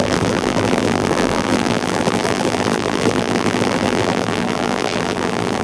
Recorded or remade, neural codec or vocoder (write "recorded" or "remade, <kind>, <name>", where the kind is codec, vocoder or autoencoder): remade, vocoder, BigVGAN v2